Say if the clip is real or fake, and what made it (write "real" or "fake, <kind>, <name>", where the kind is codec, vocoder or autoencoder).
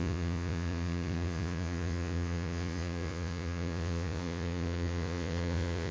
fake, vocoder, Vocos